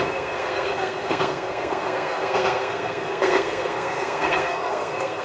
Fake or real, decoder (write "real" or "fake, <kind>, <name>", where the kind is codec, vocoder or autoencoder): fake, codec, SNAC